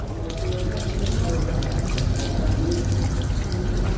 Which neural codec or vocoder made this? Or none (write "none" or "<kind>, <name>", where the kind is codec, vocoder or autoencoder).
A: none